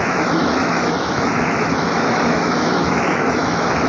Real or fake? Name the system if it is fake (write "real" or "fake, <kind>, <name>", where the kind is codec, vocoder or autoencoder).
fake, autoencoder, DAC-VAE